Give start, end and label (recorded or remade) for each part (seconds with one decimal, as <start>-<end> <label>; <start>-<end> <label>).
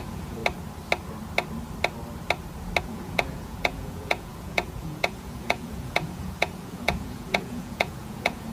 0.0-0.4 remade; 0.4-2.8 recorded; 2.8-8.5 remade